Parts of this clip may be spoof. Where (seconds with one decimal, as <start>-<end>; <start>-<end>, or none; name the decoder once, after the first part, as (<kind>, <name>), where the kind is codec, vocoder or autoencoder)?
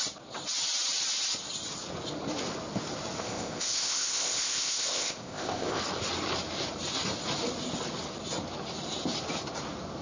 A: 3.2-5.8 (codec, ZipCodec)